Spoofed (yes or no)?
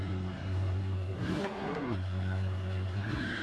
yes